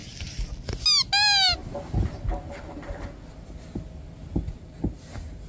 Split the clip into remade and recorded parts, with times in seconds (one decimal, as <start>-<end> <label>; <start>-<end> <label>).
0.0-5.5 recorded

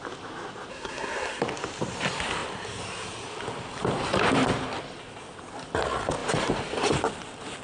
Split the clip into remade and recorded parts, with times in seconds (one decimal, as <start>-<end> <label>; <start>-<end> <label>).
0.0-0.7 recorded; 0.7-1.4 remade; 1.4-7.6 recorded